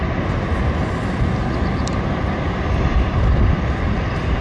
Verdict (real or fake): real